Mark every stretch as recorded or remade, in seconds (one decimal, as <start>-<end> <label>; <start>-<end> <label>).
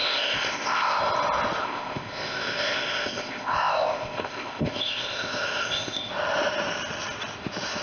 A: 0.0-1.0 remade; 1.0-1.6 recorded; 1.6-6.1 remade; 6.1-7.8 recorded